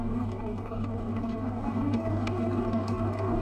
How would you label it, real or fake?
fake